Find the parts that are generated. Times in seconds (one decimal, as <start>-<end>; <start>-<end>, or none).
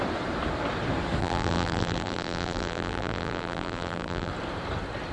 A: 1.2-4.3